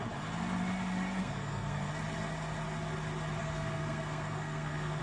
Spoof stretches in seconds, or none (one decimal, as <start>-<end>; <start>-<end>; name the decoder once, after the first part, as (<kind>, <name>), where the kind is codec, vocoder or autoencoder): 1.2-1.9 (codec, SNAC); 3.4-5.0